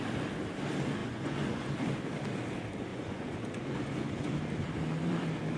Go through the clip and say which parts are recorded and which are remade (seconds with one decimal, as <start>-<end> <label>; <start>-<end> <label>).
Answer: 0.0-1.0 recorded; 1.0-1.7 remade; 1.7-2.9 recorded; 2.9-4.3 remade; 4.3-5.6 recorded